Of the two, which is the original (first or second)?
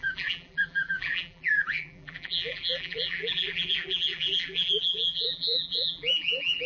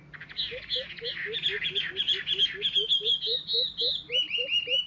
second